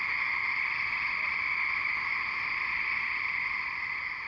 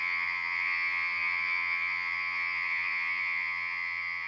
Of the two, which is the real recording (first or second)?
first